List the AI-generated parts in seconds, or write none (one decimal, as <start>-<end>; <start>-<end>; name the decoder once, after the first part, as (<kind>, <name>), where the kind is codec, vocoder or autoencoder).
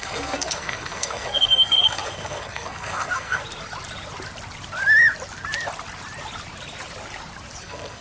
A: 0.0-3.4 (codec, SNAC); 7.6-8.0